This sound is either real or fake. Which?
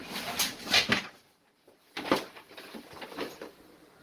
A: fake